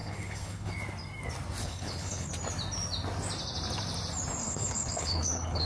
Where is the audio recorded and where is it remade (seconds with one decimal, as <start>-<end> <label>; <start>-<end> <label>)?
0.0-0.7 remade; 0.7-1.6 recorded; 1.6-2.3 remade; 2.3-4.4 recorded; 4.4-5.7 remade